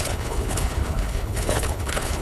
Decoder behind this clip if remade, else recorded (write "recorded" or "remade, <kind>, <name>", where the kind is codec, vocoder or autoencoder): remade, codec, HILCodec